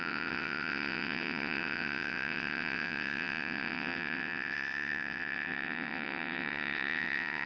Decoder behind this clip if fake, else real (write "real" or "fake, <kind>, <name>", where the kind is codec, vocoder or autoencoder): fake, vocoder, WaveNeXt